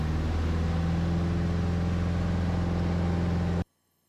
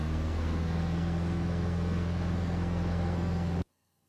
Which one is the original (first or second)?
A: first